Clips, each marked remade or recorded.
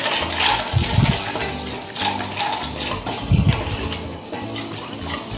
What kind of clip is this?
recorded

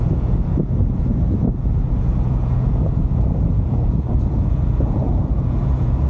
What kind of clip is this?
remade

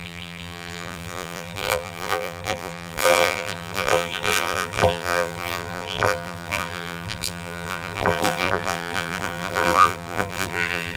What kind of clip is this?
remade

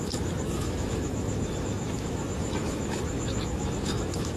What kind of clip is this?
remade